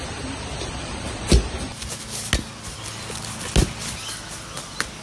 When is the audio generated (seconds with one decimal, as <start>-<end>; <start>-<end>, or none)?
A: none